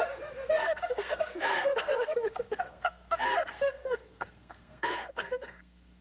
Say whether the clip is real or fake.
fake